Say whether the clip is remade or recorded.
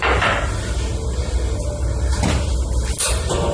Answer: recorded